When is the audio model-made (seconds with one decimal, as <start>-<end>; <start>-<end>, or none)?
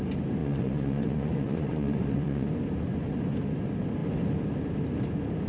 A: 0.4-2.5